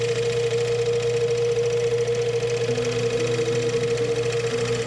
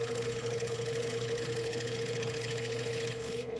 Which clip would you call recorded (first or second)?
first